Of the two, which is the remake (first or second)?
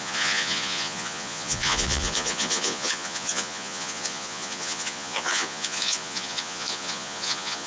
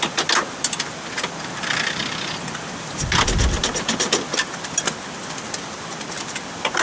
first